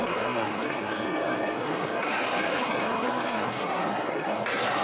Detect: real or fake fake